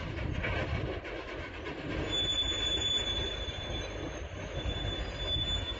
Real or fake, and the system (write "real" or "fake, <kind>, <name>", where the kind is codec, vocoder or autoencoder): real